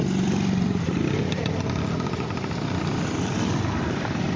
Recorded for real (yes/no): no